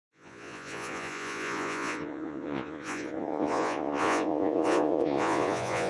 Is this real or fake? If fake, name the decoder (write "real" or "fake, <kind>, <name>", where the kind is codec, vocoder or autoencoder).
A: fake, vocoder, Vocos